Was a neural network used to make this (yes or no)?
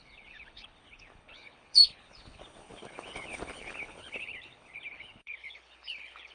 yes